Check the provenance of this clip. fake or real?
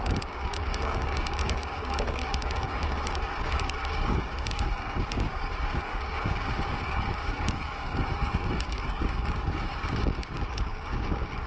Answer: fake